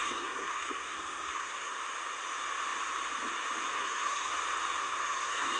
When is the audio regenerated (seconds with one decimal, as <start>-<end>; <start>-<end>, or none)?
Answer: 0.0-1.8; 3.7-4.3; 4.8-5.6